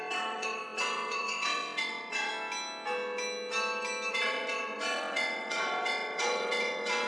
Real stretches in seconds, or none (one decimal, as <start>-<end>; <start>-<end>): 2.3-4.1